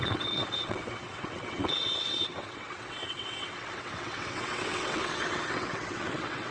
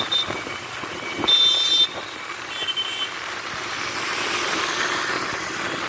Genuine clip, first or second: second